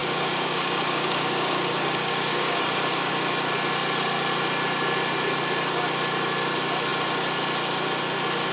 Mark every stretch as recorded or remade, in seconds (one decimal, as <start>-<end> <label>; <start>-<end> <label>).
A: 0.0-3.1 remade; 3.1-8.5 recorded